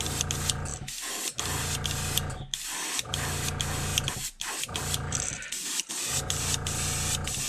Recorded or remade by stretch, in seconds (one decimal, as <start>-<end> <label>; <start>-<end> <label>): 0.0-3.9 recorded; 3.9-5.9 remade; 5.9-7.5 recorded